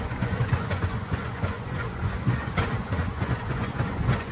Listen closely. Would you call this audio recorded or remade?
remade